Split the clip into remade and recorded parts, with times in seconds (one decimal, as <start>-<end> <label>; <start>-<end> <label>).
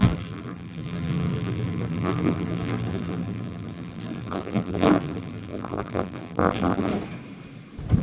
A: 0.0-6.9 remade; 6.9-8.0 recorded